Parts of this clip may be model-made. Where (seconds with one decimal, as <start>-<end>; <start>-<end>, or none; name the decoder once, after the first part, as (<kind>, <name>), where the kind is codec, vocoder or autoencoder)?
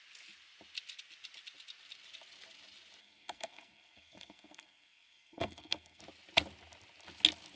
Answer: 3.0-6.0 (codec, SNAC)